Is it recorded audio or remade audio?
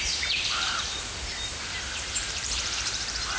remade